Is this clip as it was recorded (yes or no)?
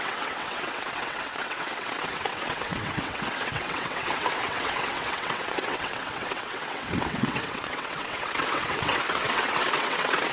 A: no